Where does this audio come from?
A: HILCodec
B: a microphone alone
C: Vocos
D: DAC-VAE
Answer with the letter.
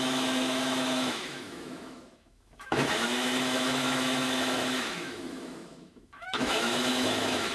D